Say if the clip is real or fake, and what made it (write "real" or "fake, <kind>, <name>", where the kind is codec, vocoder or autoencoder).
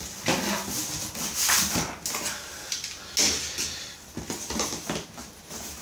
real